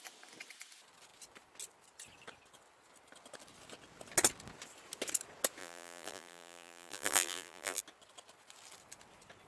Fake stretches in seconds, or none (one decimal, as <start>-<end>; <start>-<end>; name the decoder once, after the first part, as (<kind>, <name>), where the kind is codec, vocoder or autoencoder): 5.6-7.8 (vocoder, BigVGAN v2)